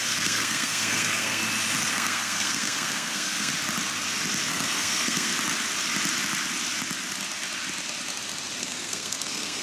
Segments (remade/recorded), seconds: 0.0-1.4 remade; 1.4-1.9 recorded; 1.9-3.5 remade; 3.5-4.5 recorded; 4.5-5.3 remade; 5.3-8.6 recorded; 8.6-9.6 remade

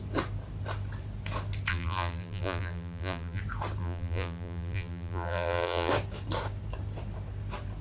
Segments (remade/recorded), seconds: 0.0-1.7 recorded; 1.7-3.4 remade; 3.4-3.8 recorded; 3.8-5.9 remade; 5.9-7.8 recorded

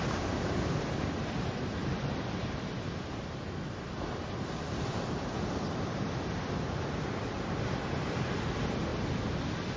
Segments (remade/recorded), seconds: 0.0-9.8 recorded

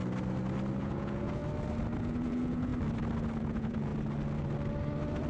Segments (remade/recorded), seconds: 0.0-0.8 recorded; 0.8-1.4 remade; 1.4-2.0 recorded; 2.0-2.7 remade; 2.7-3.4 recorded; 3.4-3.9 remade; 3.9-5.3 recorded

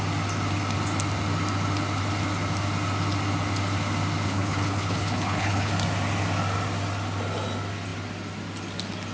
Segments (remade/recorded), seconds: 0.0-4.3 recorded; 4.3-5.7 remade; 5.7-9.1 recorded

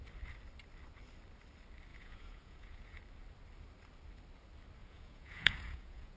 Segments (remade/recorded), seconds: 0.0-1.9 recorded; 1.9-3.0 remade; 3.0-4.8 recorded; 4.8-6.2 remade

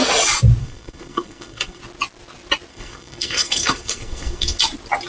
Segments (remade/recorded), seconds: 0.0-0.6 recorded; 0.6-1.8 remade; 1.8-2.7 recorded; 2.7-4.6 remade; 4.6-5.1 recorded

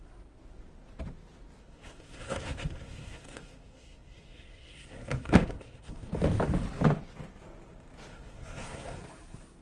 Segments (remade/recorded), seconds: 0.0-1.6 recorded; 1.6-6.1 remade; 6.1-8.1 recorded; 8.1-9.0 remade; 9.0-9.6 recorded